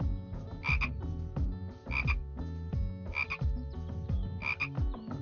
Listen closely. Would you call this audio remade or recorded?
recorded